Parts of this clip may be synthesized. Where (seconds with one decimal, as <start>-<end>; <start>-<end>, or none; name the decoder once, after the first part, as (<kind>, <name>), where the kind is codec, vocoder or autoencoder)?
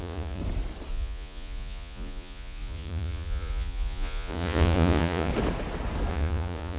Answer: 0.0-0.4 (vocoder, Vocos); 0.9-5.3; 6.1-6.8